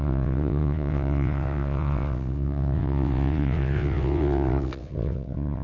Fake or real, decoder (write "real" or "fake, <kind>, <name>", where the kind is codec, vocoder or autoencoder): fake, vocoder, WaveNeXt